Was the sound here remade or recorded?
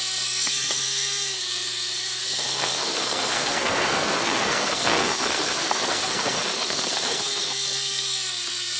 remade